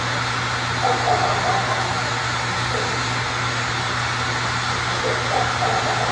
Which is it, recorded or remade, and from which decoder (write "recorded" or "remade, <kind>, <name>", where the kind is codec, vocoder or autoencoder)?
recorded